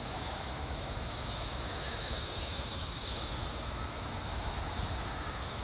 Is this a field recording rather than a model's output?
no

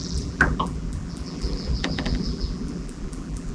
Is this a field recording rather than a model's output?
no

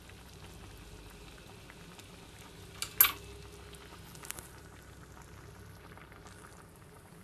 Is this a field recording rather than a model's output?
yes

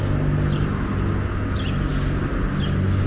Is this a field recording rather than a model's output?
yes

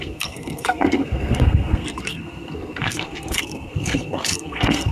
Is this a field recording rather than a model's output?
no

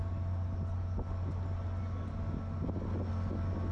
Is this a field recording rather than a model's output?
yes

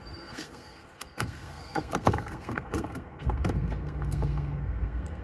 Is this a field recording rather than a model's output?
no